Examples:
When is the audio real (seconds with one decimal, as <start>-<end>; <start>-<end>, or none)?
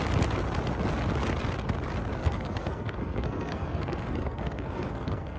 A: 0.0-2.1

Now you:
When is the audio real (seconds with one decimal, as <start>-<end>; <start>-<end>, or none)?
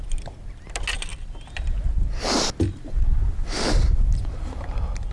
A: 0.0-5.1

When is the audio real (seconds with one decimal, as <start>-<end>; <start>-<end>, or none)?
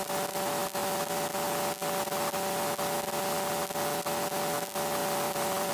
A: 0.0-5.0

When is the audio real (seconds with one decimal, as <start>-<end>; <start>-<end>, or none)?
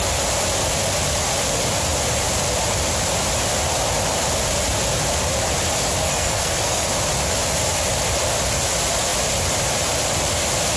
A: 0.0-6.0; 6.9-10.8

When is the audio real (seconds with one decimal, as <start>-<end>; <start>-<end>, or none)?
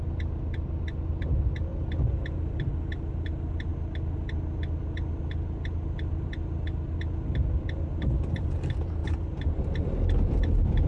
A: 0.0-9.0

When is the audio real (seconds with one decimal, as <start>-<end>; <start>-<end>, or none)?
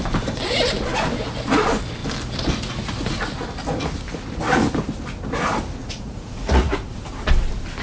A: 0.0-5.8; 6.7-7.8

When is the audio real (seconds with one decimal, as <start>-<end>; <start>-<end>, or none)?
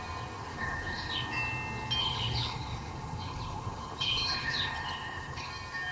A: 0.0-0.5; 1.1-2.0; 5.5-5.9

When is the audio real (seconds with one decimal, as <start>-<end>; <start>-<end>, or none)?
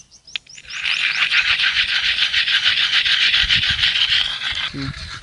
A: 0.0-1.2; 4.0-5.2